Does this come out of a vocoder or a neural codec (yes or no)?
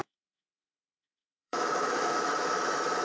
yes